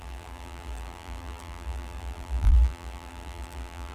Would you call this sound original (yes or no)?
no